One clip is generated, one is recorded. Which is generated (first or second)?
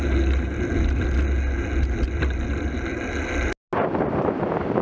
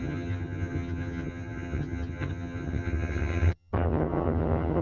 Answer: second